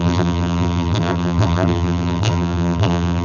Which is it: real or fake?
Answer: fake